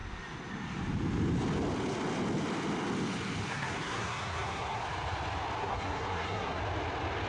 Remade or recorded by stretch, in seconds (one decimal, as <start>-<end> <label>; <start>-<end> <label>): 0.0-3.5 recorded; 3.5-4.8 remade; 4.8-5.6 recorded; 5.6-6.6 remade; 6.6-7.3 recorded

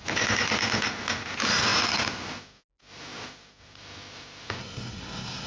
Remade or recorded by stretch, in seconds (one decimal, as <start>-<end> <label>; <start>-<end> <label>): 0.0-4.6 recorded; 4.6-5.5 remade